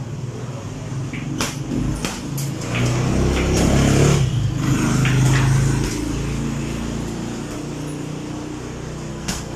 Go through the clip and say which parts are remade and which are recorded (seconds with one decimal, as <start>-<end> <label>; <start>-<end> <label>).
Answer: 0.0-9.1 recorded; 9.1-9.6 remade